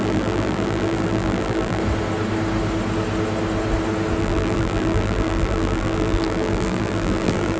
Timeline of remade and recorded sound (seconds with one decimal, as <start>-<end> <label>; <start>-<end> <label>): 0.0-1.8 remade; 1.8-4.2 recorded; 4.2-7.6 remade